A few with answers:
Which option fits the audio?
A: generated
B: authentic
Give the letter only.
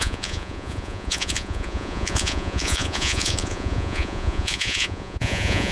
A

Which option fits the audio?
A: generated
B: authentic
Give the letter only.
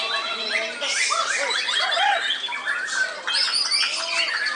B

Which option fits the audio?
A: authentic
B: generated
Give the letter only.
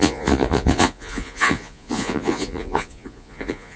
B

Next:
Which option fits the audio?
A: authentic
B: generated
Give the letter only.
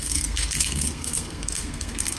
B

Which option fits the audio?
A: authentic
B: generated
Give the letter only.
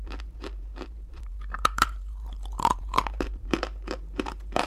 B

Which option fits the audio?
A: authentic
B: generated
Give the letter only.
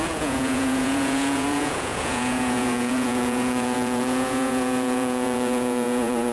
B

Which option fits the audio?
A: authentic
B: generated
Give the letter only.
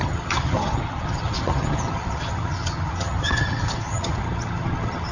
B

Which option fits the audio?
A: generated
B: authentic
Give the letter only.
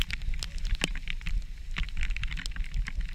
B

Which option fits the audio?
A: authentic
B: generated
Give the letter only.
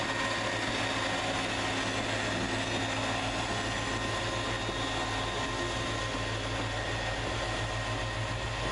A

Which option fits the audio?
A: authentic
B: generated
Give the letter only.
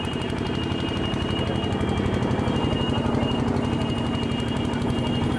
A